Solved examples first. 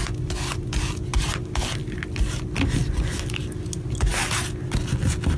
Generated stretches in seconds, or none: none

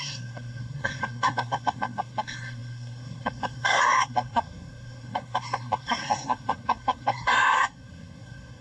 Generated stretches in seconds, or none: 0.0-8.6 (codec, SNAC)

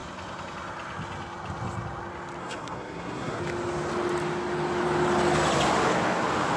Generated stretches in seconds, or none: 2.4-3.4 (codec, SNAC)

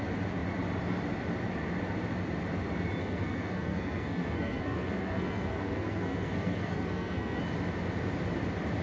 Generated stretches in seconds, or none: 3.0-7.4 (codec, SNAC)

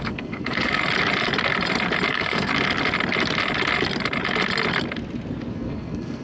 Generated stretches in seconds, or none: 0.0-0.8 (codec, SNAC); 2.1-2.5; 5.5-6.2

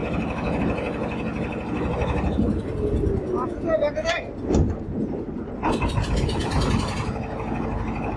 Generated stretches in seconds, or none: none